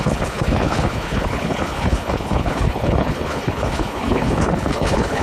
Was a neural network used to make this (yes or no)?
yes